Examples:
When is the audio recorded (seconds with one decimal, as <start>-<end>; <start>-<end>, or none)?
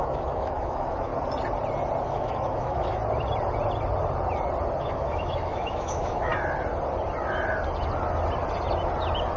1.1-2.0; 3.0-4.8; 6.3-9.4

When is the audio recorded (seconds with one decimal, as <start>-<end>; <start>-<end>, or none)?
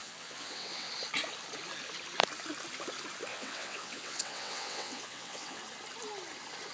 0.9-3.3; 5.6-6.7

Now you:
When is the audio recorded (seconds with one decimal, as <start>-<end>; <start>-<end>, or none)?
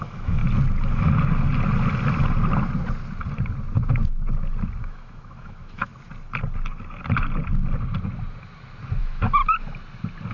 0.4-4.8; 5.9-9.0; 9.4-10.3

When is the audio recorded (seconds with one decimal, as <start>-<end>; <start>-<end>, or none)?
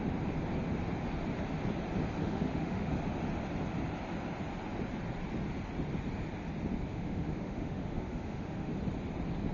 0.0-2.2; 2.9-6.9; 8.7-9.5